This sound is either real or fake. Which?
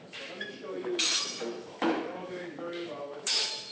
fake